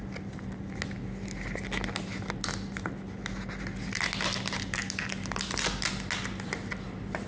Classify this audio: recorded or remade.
recorded